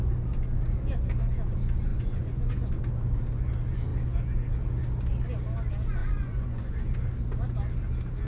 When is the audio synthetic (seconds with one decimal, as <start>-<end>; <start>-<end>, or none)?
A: 1.9-2.8; 6.0-6.7